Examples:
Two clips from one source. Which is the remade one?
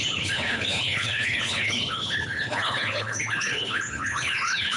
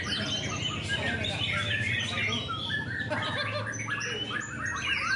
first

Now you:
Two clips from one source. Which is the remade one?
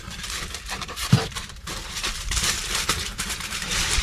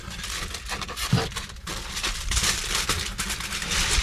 first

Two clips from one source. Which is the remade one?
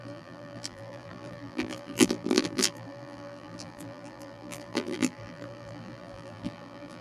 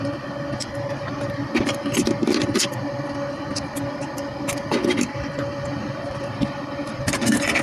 first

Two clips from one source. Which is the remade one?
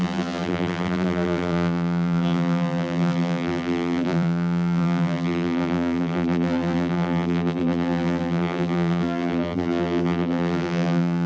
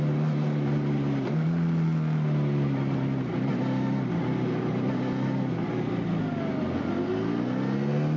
first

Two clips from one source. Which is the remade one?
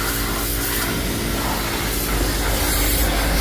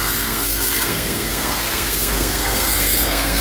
second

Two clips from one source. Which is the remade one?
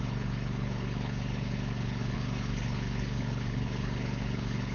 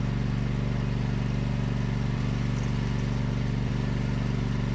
first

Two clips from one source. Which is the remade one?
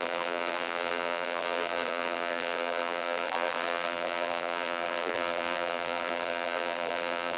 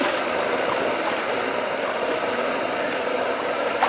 first